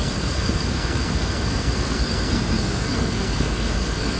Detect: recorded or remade remade